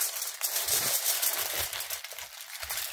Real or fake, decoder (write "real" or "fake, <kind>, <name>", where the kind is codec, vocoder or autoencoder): real